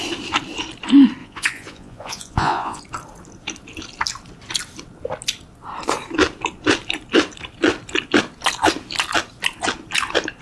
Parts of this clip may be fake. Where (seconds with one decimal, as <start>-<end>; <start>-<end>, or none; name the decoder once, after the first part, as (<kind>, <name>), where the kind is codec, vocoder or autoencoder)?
1.2-2.8 (vocoder, Vocos)